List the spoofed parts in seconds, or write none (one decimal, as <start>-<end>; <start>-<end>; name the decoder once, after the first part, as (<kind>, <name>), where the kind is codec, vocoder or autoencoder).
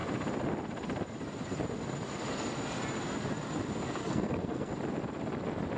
4.0-4.7 (codec, SNAC)